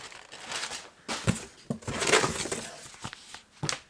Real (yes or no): yes